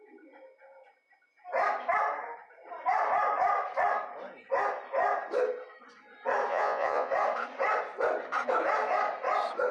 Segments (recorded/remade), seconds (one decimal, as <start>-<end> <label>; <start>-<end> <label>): 0.0-6.5 recorded; 6.5-7.1 remade; 7.1-9.7 recorded